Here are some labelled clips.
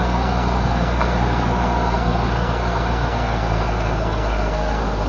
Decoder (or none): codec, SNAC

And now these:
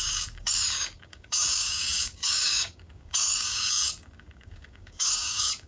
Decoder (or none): codec, DAC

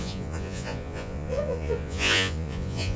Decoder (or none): vocoder, Vocos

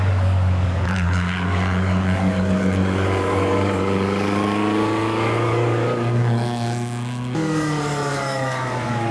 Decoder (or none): codec, DAC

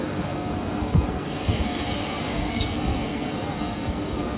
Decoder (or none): codec, SNAC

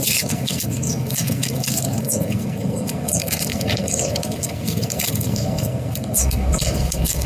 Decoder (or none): codec, SNAC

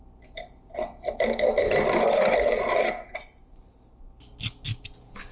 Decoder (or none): none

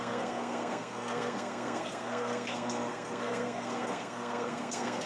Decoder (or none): codec, SNAC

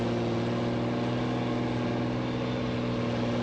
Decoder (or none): none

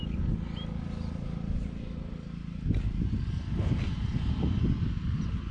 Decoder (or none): none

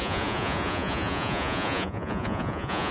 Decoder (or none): vocoder, Vocos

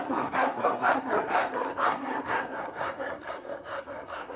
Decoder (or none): codec, SNAC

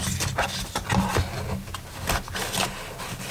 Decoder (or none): none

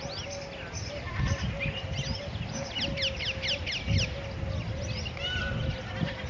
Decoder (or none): none